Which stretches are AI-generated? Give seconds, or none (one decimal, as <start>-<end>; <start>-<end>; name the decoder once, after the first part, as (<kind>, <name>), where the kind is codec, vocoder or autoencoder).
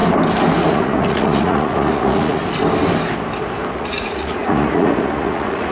0.6-2.4 (vocoder, Vocos); 3.7-5.7